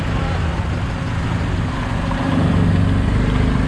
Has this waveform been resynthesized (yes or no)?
no